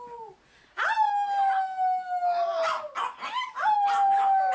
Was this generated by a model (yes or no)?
no